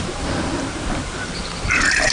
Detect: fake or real fake